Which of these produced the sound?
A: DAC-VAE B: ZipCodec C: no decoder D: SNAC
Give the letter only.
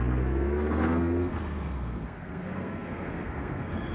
D